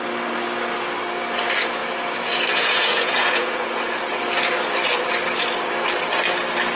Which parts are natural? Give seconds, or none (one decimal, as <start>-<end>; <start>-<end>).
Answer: 0.0-1.8; 4.0-6.8